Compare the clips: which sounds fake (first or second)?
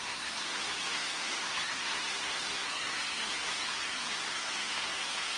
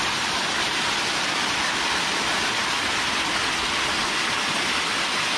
first